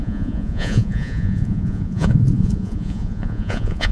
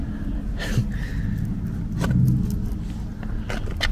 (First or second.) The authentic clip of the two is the second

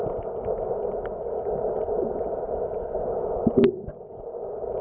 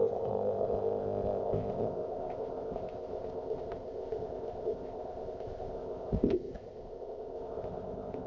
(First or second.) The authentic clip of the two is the first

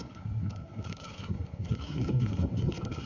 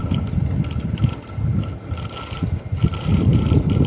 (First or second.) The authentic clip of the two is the second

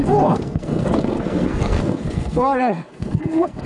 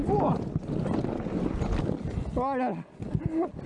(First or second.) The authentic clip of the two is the second